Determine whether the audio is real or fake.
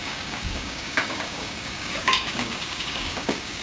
fake